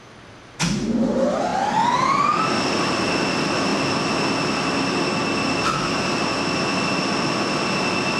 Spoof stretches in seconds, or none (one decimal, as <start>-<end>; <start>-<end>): 3.7-4.3